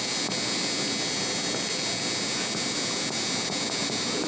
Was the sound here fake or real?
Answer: real